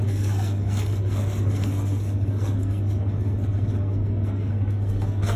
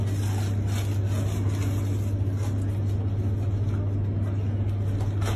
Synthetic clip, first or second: first